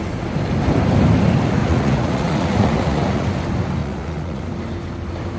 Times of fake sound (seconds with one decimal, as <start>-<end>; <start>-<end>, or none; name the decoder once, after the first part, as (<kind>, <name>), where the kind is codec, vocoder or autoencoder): 1.6-3.3 (vocoder, Vocos); 3.8-4.4